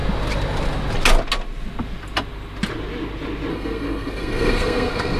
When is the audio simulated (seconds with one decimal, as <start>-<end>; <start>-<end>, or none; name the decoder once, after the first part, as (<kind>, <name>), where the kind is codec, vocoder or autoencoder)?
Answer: 3.5-5.2 (codec, SNAC)

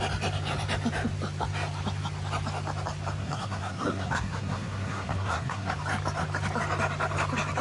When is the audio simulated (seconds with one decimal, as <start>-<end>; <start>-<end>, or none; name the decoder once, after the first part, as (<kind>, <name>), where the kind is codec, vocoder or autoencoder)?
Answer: 3.2-5.7 (codec, SNAC)

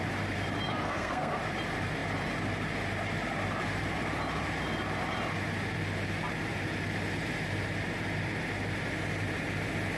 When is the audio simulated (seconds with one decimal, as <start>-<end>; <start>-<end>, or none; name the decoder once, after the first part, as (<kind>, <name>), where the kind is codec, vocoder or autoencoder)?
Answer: 0.7-1.4 (codec, SNAC)

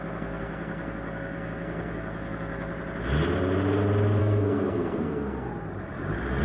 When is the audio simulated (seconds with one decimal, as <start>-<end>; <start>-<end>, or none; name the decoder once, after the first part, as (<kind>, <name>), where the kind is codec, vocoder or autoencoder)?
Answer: 0.0-2.7 (codec, SNAC); 4.2-5.5

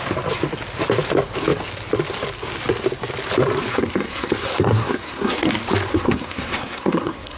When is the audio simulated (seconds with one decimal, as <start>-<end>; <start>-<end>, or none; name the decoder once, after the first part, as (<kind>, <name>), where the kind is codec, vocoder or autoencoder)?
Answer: 3.7-5.5 (codec, SNAC); 5.9-7.4

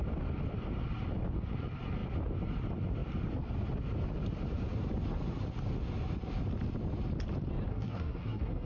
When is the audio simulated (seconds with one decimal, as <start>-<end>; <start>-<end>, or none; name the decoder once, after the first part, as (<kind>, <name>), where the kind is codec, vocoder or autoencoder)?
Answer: 7.7-8.7 (codec, SNAC)

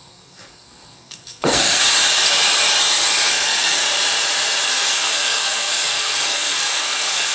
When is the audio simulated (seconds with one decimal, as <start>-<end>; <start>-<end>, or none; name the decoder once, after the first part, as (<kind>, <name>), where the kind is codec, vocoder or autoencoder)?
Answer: 0.0-1.8 (codec, SNAC); 3.3-3.8; 4.7-7.3

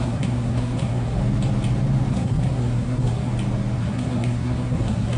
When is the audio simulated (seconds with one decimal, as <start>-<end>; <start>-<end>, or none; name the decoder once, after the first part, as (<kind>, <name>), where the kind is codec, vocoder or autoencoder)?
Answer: 0.0-1.2 (codec, SNAC); 2.1-3.3; 3.8-5.2